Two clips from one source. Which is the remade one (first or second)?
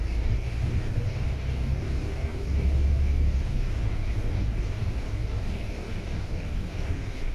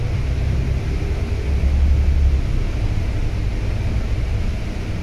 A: first